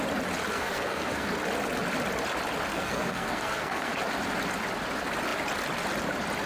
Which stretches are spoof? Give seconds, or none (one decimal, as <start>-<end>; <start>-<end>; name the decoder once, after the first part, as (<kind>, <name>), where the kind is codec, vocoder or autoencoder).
0.5-1.3 (codec, SNAC); 2.7-3.9